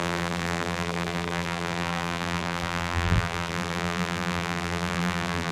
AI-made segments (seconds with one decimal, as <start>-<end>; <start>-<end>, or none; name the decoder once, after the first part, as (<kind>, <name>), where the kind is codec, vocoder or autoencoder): 0.0-5.5 (vocoder, BigVGAN v2)